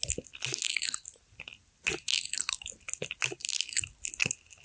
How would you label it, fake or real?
real